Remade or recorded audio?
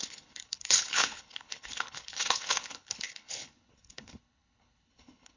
remade